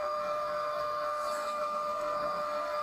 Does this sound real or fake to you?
fake